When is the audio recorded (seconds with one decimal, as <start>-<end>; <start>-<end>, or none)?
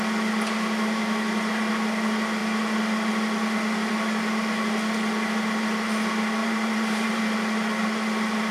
0.0-6.4; 7.2-8.5